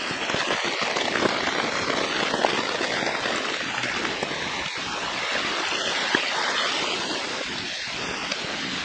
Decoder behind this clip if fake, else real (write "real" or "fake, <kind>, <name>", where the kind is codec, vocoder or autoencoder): real